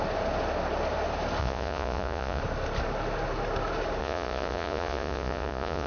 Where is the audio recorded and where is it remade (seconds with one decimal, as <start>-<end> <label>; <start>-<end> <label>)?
0.0-1.4 recorded; 1.4-2.4 remade; 2.4-4.0 recorded; 4.0-5.9 remade